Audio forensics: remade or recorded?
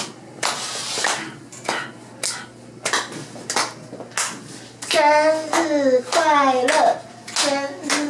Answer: recorded